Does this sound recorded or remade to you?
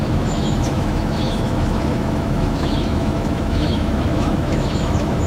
remade